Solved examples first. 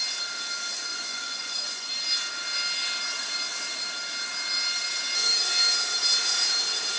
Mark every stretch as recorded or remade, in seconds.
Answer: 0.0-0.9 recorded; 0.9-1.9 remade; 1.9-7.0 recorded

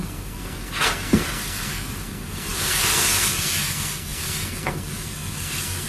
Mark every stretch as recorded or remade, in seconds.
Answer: 0.0-5.9 remade

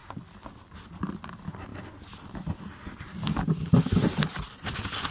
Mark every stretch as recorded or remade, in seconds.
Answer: 0.0-5.1 recorded

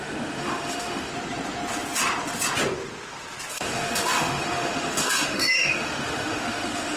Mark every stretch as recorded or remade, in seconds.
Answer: 0.0-1.1 remade; 1.1-3.5 recorded; 3.5-7.0 remade

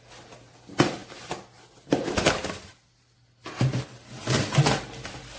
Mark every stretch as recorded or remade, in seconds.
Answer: 0.0-5.4 recorded

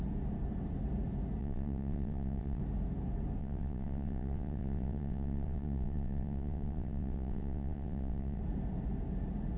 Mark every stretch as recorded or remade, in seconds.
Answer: 0.0-1.4 recorded; 1.4-2.6 remade; 2.6-3.4 recorded; 3.4-8.4 remade; 8.4-9.6 recorded

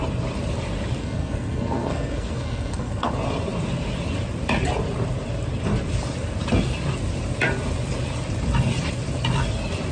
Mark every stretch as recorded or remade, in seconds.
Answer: 0.0-1.0 recorded; 1.0-3.1 remade; 3.1-9.9 recorded

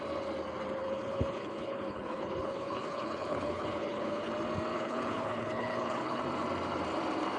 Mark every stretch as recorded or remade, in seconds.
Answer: 0.0-0.8 recorded; 0.8-4.3 remade; 4.3-4.7 recorded; 4.7-6.2 remade; 6.2-7.4 recorded